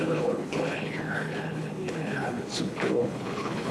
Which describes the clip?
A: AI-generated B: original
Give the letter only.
A